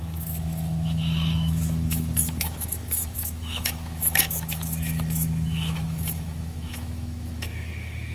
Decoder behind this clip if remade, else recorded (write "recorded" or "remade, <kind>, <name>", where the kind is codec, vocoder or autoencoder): remade, autoencoder, DAC-VAE